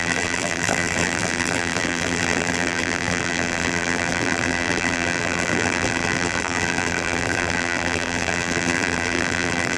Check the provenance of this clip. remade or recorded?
remade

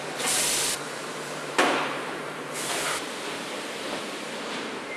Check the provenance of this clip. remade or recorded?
remade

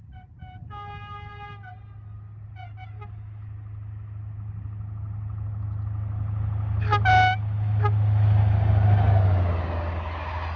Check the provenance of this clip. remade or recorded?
recorded